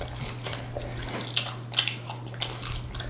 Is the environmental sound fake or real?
real